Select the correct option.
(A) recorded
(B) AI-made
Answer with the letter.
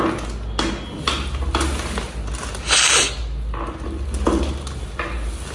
A